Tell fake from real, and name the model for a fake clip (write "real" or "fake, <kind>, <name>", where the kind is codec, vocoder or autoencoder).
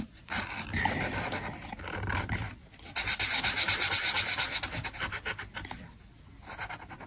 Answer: real